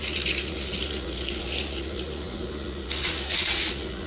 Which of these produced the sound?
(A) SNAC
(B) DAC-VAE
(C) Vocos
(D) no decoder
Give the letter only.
C